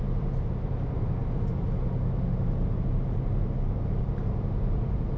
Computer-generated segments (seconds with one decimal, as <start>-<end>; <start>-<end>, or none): none